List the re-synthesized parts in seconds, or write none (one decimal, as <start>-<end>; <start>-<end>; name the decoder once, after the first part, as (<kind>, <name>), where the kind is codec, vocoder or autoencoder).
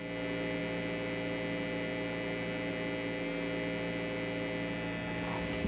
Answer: none